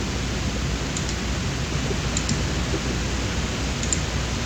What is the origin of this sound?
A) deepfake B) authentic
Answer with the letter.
B